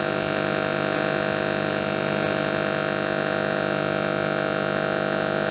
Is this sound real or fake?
real